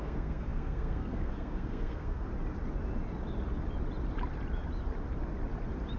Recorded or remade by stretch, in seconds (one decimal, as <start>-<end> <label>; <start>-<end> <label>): 0.0-2.3 remade; 2.3-6.0 recorded

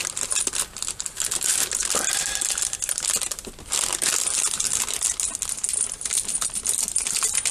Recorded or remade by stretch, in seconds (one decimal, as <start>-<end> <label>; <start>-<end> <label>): 0.0-7.5 recorded